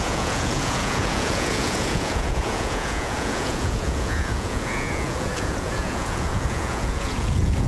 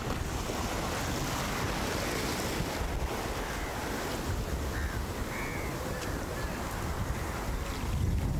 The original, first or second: second